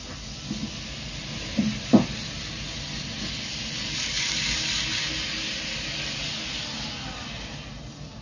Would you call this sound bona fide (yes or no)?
yes